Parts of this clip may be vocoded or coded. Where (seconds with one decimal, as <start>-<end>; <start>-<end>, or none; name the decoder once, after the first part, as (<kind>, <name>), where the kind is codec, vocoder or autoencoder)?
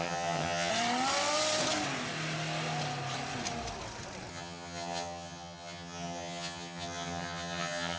0.0-0.7 (vocoder, HiFi-GAN); 4.3-8.0